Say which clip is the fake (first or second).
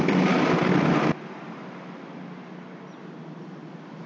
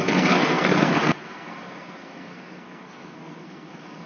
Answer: second